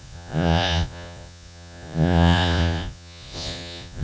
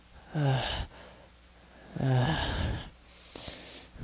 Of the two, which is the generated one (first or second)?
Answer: first